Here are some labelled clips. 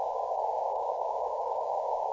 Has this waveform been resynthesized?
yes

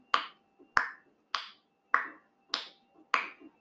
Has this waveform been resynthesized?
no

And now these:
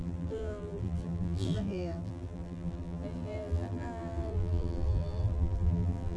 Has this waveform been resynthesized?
yes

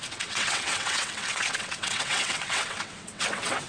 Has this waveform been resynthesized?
yes